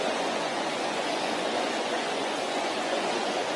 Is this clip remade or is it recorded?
remade